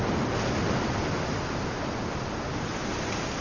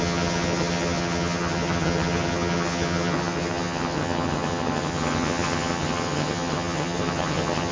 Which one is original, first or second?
first